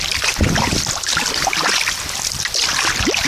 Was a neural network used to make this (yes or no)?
no